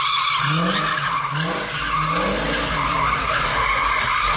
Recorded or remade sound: recorded